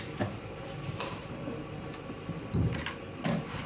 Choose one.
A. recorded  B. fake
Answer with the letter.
A